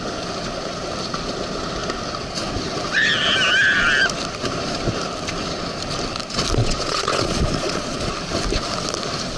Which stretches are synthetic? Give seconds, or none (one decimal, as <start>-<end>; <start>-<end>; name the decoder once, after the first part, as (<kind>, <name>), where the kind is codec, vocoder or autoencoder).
6.6-8.1 (vocoder, Vocos)